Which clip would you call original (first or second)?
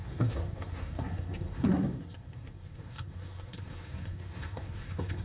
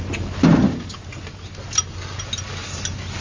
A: second